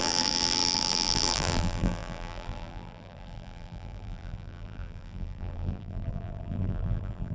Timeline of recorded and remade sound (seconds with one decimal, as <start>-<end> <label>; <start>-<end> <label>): 0.0-7.3 remade